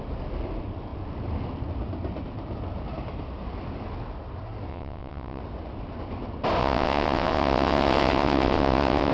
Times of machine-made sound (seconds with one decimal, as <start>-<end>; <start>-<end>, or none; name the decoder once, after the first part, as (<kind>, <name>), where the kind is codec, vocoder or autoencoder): 4.7-5.4 (vocoder, WaveNeXt); 6.6-9.1